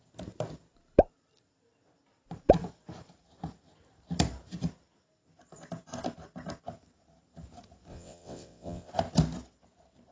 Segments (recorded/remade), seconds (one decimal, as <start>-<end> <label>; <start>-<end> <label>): 0.0-7.9 recorded; 7.9-8.9 remade; 8.9-10.1 recorded